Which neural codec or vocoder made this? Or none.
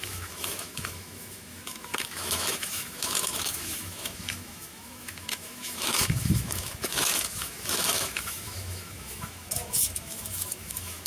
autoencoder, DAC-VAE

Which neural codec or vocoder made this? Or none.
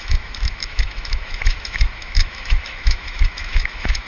autoencoder, DAC-VAE